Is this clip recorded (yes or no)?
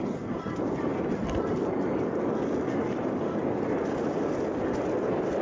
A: yes